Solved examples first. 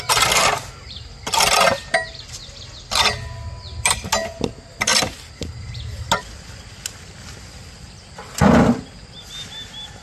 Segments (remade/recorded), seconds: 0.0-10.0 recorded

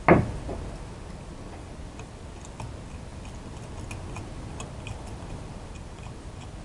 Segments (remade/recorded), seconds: 0.0-6.6 recorded

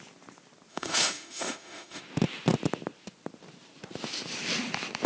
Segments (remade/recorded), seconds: 0.0-0.7 recorded; 0.7-2.0 remade; 2.0-5.1 recorded

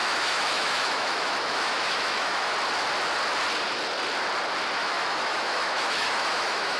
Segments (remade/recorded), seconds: 0.0-2.5 remade; 2.5-4.8 recorded; 4.8-6.8 remade